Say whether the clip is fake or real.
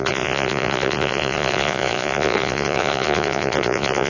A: fake